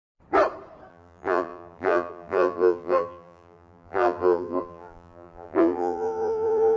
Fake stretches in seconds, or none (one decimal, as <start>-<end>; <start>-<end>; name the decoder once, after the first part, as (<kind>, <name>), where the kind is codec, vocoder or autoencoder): 0.9-6.8 (vocoder, BigVGAN v2)